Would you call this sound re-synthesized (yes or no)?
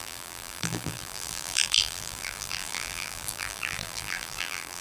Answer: yes